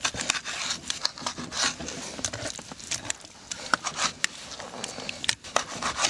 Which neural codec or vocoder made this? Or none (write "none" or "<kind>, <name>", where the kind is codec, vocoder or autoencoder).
none